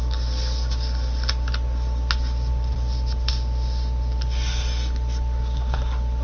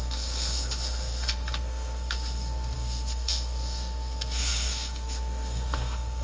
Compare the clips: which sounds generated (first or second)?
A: second